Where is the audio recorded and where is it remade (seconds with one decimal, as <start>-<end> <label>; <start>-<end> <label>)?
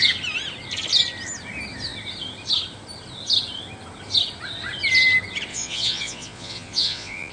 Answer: 0.0-5.5 recorded; 5.5-7.3 remade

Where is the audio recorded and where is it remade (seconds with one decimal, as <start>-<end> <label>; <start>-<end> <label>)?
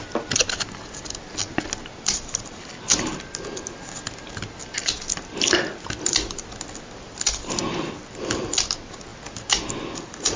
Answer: 0.0-10.4 recorded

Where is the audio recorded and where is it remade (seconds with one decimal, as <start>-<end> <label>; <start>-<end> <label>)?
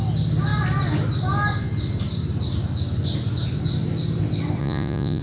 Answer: 0.0-4.6 recorded; 4.6-5.2 remade